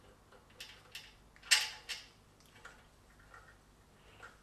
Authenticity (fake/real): real